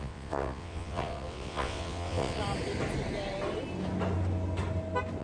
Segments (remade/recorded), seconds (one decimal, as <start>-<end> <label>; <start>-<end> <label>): 0.0-2.4 remade; 2.4-5.2 recorded